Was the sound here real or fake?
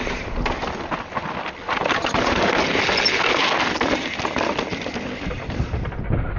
real